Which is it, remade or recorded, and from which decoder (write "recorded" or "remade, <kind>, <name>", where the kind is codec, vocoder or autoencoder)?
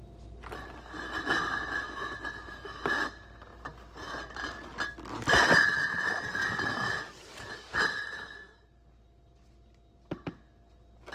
recorded